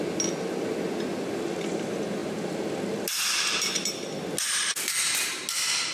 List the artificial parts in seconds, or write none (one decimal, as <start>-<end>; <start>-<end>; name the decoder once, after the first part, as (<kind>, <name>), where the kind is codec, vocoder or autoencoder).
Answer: none